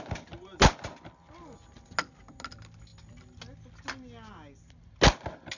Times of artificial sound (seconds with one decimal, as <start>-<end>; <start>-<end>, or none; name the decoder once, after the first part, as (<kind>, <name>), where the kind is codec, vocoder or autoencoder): none